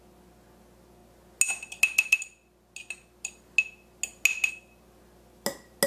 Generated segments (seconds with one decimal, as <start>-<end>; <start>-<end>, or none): none